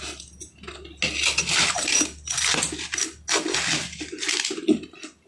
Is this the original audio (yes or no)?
yes